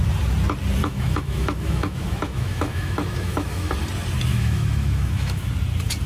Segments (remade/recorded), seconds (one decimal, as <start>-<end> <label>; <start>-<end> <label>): 0.0-0.8 recorded; 0.8-3.7 remade; 3.7-4.3 recorded; 4.3-5.5 remade; 5.5-6.1 recorded

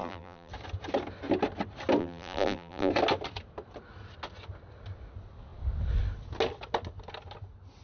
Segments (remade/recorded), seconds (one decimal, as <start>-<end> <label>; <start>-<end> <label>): 0.0-0.5 remade; 0.5-2.0 recorded; 2.0-2.9 remade; 2.9-7.8 recorded